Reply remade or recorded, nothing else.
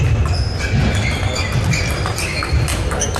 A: recorded